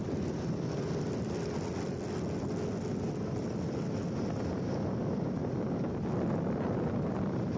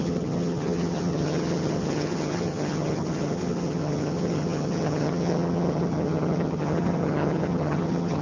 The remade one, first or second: second